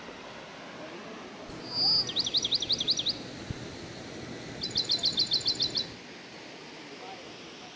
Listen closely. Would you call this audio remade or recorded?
recorded